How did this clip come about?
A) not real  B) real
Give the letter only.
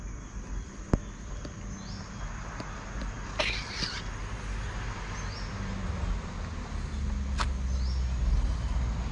B